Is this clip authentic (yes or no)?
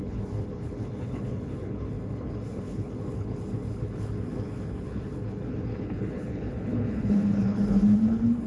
no